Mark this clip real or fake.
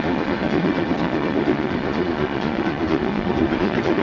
fake